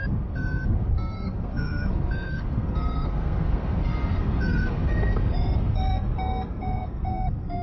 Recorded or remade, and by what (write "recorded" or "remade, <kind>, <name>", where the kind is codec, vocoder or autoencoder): remade, codec, SNAC